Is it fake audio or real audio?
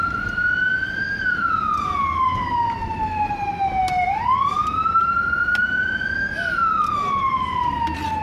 real